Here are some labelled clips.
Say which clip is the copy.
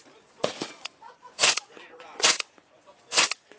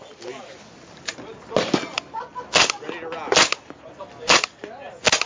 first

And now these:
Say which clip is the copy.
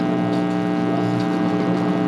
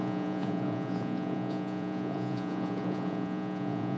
second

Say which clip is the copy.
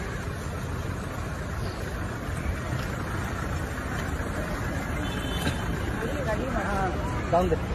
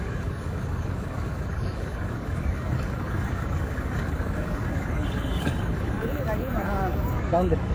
second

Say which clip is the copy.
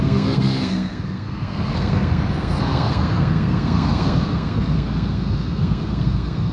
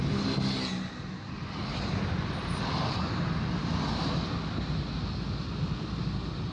first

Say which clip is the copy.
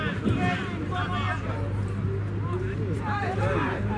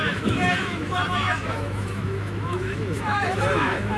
second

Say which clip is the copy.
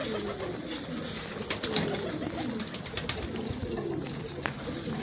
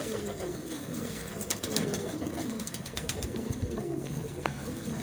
second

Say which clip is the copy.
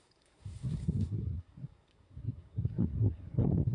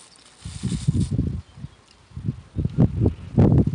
first